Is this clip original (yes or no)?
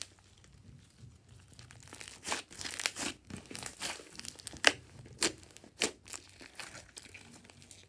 yes